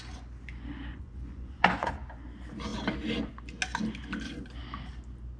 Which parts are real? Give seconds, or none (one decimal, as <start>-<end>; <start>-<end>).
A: 0.0-0.9; 1.9-5.4